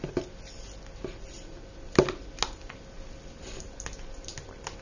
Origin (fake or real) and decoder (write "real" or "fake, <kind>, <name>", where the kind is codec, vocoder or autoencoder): real